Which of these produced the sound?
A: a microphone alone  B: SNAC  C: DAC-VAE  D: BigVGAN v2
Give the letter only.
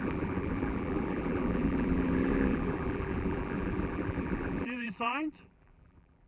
D